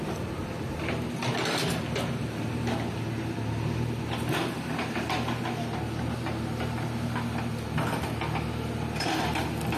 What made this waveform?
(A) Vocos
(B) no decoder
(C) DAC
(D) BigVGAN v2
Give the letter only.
B